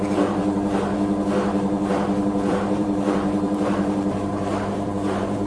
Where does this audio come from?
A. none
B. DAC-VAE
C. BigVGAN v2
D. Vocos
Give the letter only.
C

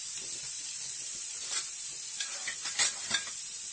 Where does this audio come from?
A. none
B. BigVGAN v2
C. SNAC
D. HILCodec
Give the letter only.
B